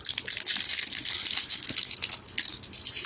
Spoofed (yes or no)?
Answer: no